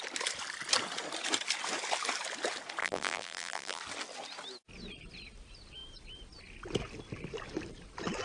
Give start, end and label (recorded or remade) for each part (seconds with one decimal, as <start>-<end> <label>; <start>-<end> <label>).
0.0-2.8 recorded; 2.8-3.8 remade; 3.8-8.2 recorded

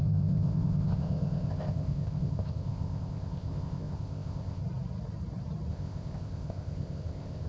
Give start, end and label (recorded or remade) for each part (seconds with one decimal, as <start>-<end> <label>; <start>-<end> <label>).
0.0-4.6 remade; 4.6-5.7 recorded; 5.7-7.5 remade

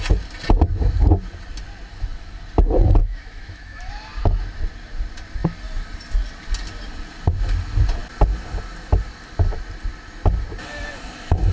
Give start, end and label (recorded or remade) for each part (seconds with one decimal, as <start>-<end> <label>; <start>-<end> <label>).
0.0-1.9 recorded; 1.9-2.4 remade; 2.4-3.0 recorded; 3.0-3.9 remade; 3.9-11.5 recorded

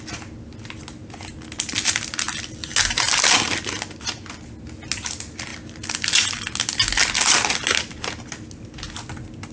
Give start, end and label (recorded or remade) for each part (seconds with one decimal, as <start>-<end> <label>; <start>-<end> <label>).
0.0-9.5 recorded

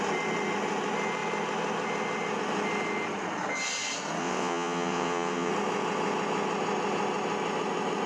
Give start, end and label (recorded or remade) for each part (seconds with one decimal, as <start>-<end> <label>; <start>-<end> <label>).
0.0-4.2 recorded; 4.2-5.5 remade; 5.5-8.1 recorded

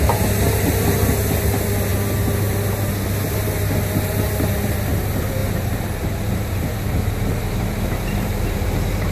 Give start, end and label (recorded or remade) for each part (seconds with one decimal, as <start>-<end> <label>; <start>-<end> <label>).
0.0-5.4 recorded; 5.4-9.1 remade